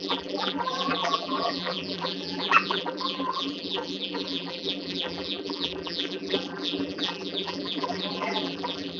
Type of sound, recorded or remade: remade